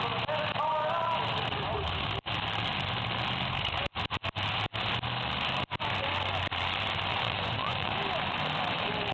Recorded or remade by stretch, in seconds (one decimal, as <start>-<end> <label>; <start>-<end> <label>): 0.0-7.1 recorded; 7.1-7.9 remade; 7.9-9.1 recorded